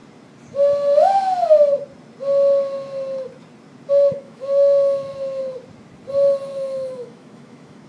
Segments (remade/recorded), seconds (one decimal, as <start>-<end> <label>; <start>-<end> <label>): 0.0-3.9 recorded; 3.9-5.4 remade; 5.4-6.5 recorded; 6.5-7.9 remade